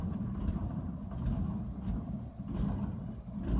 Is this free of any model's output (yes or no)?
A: no